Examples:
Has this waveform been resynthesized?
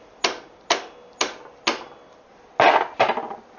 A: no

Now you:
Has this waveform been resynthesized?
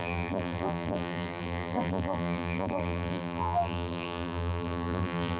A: yes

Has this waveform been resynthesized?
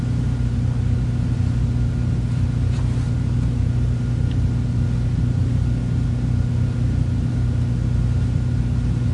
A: no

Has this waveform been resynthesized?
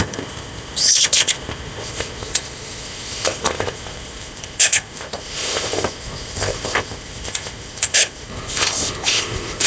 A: yes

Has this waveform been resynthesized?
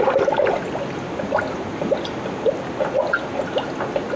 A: no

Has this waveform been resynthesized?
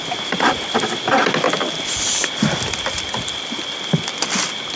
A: no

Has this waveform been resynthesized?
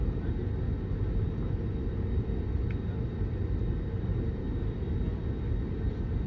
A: no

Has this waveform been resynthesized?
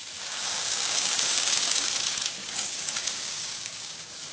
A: yes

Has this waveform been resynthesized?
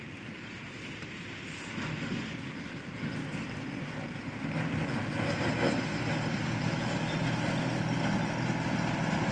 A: no